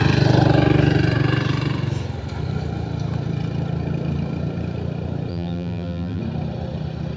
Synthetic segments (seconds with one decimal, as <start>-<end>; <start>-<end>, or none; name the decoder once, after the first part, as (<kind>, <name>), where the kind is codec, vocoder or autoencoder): 5.3-6.2 (vocoder, BigVGAN v2)